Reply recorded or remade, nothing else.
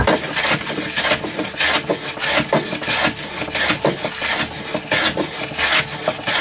recorded